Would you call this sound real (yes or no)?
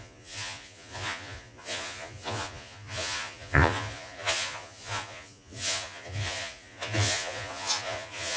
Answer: no